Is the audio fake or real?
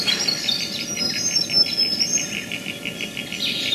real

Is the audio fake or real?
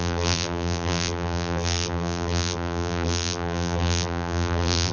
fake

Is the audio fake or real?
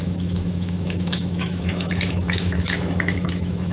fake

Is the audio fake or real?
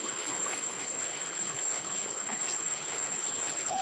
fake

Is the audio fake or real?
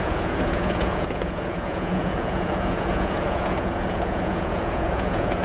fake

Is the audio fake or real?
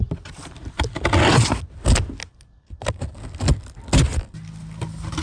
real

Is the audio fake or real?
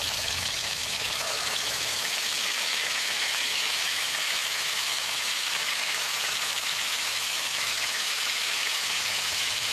fake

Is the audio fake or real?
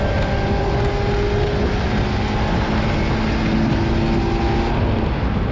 real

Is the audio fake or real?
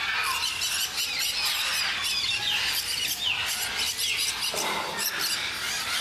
real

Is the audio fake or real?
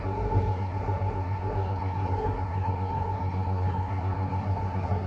fake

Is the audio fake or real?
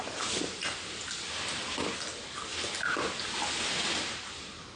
real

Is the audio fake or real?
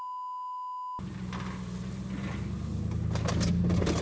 real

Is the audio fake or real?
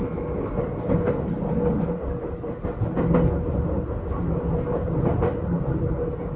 real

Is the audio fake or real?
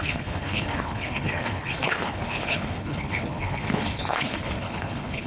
fake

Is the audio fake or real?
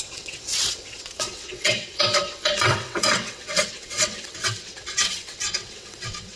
fake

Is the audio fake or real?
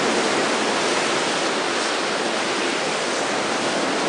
real